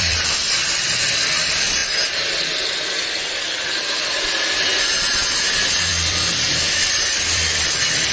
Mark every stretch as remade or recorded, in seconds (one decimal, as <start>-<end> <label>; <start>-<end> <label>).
0.0-1.8 remade; 1.8-5.5 recorded; 5.5-8.1 remade

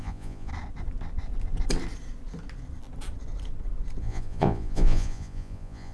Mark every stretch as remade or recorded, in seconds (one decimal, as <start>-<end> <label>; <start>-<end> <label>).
0.0-0.5 remade; 0.5-4.0 recorded; 4.0-5.9 remade

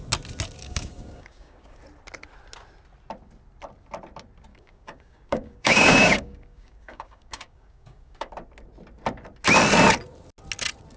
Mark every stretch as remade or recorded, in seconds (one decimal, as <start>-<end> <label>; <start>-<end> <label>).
0.0-0.6 recorded; 0.6-1.8 remade; 1.8-4.5 recorded; 4.5-8.3 remade; 8.3-11.0 recorded

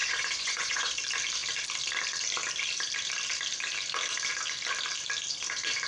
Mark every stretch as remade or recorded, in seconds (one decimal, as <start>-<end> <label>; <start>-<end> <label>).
0.0-0.9 remade; 0.9-5.9 recorded

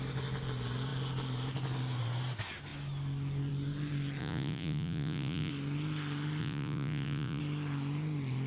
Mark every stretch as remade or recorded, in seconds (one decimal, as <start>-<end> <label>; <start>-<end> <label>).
0.0-4.2 recorded; 4.2-5.5 remade; 5.5-6.4 recorded; 6.4-7.4 remade; 7.4-8.5 recorded

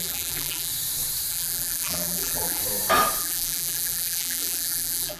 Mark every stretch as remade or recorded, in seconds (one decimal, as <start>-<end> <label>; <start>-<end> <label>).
0.0-0.7 remade; 0.7-1.3 recorded; 1.3-2.6 remade; 2.6-3.2 recorded; 3.2-5.2 remade

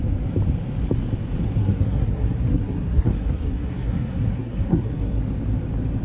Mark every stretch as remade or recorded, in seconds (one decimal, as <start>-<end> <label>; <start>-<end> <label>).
0.0-1.6 recorded; 1.6-5.2 remade; 5.2-6.0 recorded

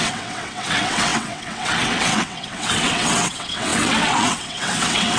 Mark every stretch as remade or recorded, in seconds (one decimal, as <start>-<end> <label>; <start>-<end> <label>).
0.0-5.2 remade